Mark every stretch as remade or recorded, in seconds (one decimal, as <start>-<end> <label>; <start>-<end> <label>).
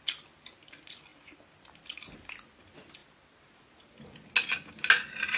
0.0-5.4 recorded